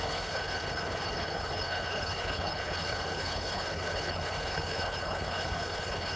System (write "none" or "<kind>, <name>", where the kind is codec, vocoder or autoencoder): codec, HILCodec